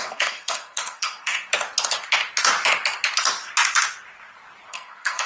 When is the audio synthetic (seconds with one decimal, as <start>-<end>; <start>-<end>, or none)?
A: 0.0-1.5; 4.7-5.3